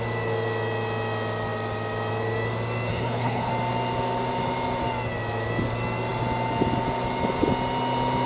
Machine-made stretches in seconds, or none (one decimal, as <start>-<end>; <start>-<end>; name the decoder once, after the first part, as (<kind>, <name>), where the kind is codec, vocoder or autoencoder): 2.9-3.5 (codec, HILCodec)